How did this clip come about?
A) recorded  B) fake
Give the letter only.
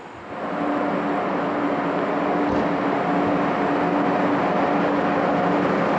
A